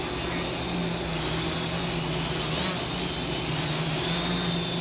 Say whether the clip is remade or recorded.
recorded